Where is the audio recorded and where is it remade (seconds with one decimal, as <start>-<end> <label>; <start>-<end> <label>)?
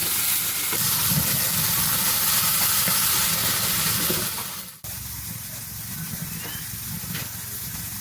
0.0-8.0 recorded